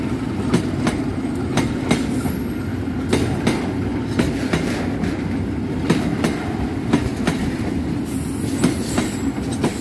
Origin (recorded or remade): recorded